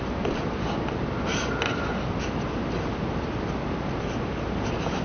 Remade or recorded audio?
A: recorded